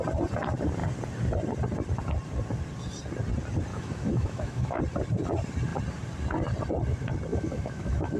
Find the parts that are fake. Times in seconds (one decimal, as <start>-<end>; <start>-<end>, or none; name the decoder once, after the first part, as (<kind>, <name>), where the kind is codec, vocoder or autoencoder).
3.7-4.8 (autoencoder, DAC-VAE); 7.3-8.2